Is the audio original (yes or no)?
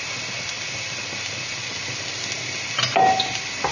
yes